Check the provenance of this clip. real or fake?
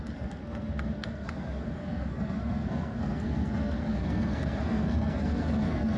fake